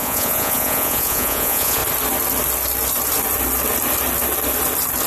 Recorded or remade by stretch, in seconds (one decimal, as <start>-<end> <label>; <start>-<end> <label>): 0.0-1.8 remade; 1.8-5.1 recorded